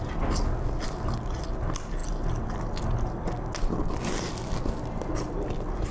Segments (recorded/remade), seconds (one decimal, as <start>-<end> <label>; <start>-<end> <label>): 0.0-5.9 recorded